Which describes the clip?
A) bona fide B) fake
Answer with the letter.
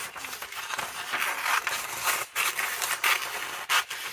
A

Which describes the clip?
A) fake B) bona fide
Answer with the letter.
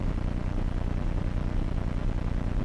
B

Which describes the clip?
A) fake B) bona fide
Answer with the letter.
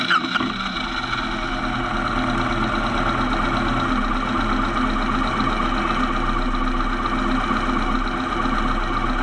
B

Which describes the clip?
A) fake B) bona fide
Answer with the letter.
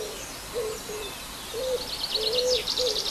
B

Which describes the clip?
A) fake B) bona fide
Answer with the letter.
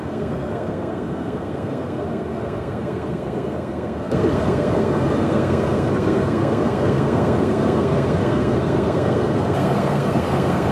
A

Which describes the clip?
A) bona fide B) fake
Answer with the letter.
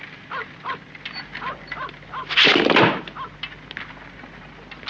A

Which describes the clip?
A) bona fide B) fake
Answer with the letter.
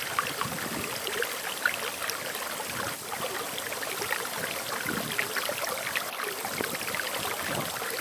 A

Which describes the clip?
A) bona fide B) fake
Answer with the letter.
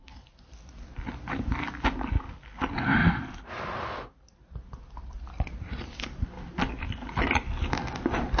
A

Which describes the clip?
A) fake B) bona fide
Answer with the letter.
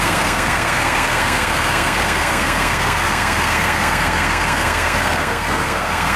A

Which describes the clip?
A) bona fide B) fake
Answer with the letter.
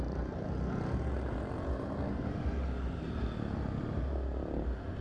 A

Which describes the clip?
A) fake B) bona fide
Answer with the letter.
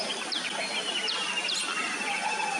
B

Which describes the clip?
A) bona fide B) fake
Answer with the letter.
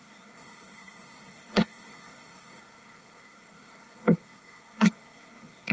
B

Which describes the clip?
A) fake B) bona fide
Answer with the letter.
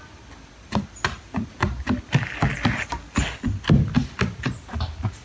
B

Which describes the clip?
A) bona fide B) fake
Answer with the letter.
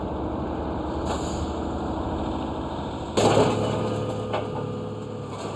A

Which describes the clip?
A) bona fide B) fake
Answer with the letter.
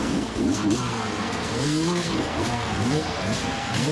B